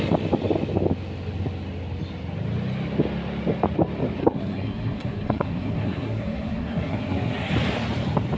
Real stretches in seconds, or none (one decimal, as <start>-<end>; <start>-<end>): 0.0-4.2; 7.5-8.4